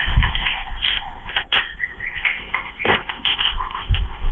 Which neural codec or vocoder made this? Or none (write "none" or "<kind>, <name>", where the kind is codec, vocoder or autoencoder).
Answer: codec, ZipCodec